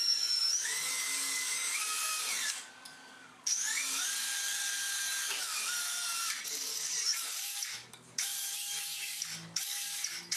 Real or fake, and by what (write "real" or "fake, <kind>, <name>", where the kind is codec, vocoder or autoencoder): fake, codec, DAC